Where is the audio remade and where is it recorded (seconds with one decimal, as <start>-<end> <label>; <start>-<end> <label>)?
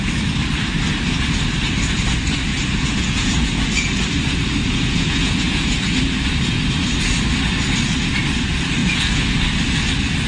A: 0.0-2.5 recorded; 2.5-4.0 remade; 4.0-4.6 recorded; 4.6-5.8 remade; 5.8-8.8 recorded; 8.8-9.3 remade; 9.3-10.3 recorded